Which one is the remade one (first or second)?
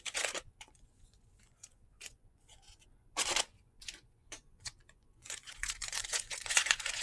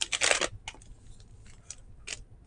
first